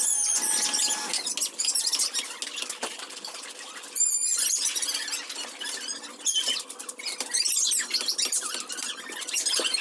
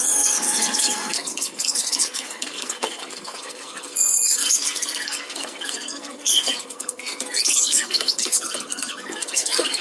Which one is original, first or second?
first